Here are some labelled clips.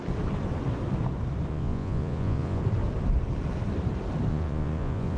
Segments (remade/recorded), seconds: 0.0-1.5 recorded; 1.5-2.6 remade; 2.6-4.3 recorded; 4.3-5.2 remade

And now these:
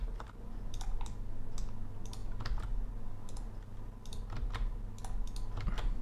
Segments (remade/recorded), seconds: 0.0-6.0 recorded